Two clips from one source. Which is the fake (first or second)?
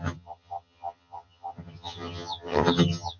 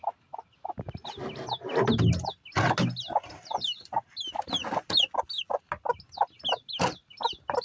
first